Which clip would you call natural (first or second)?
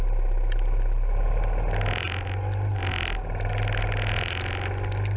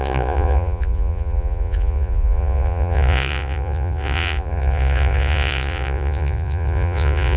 first